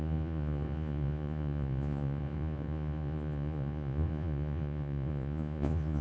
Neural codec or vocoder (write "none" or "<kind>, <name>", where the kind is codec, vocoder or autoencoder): vocoder, Vocos